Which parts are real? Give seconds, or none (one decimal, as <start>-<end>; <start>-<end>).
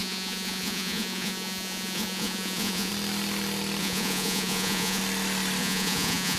2.9-3.8; 5.0-5.6